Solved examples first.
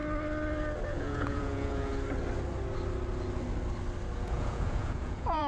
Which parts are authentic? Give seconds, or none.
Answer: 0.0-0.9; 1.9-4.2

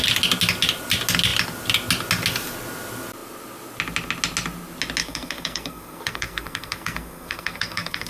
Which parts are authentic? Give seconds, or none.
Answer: 0.0-5.0

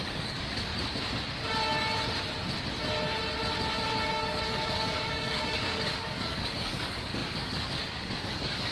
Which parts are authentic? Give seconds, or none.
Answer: 0.7-4.1

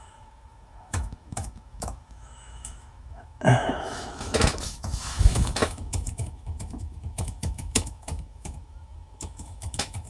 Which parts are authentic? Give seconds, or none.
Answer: none

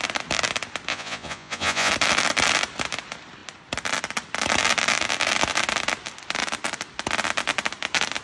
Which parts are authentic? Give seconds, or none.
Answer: 0.0-0.9; 1.9-8.2

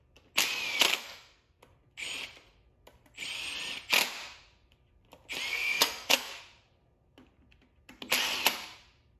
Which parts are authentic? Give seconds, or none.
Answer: 0.0-0.9; 1.6-5.5; 6.3-9.2

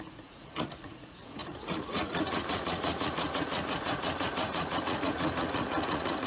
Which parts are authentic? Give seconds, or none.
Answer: none

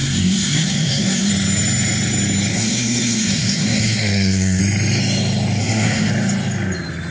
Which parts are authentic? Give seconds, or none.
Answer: 1.3-2.5; 4.6-5.6; 6.1-7.1